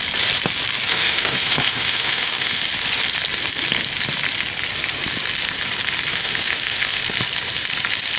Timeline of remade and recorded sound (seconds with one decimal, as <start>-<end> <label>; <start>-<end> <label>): 0.0-0.9 recorded; 0.9-2.6 remade; 2.6-6.1 recorded; 6.1-7.0 remade; 7.0-8.2 recorded